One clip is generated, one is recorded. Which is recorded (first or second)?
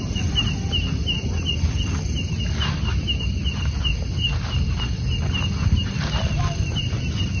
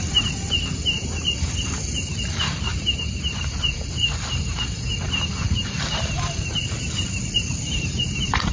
first